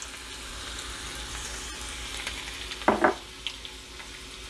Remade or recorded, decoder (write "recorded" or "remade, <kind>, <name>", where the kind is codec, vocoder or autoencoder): recorded